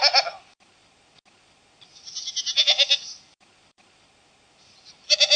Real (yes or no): yes